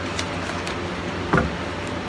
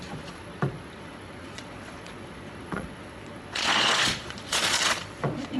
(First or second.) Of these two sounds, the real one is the first